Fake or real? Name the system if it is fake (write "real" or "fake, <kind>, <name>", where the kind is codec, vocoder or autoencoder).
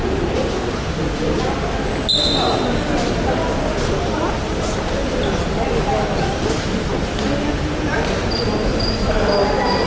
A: real